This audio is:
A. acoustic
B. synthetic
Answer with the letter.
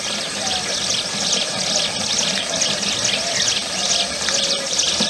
B